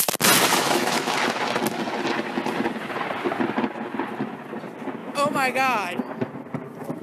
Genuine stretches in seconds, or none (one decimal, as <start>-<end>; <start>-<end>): 0.0-0.5; 1.1-5.0; 6.0-7.0